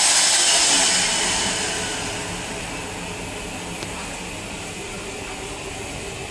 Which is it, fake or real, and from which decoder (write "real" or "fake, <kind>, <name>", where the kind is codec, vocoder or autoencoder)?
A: real